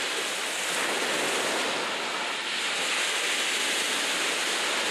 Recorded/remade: recorded